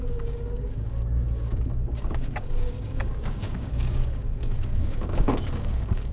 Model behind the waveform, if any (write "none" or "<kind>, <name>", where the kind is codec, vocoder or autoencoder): codec, DAC